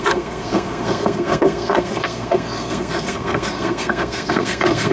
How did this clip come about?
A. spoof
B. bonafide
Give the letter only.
A